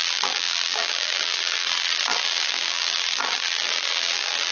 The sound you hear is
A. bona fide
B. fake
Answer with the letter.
B